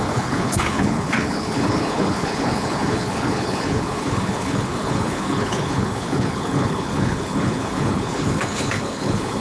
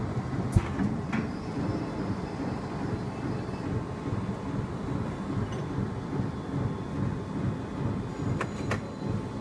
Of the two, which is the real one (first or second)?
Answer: second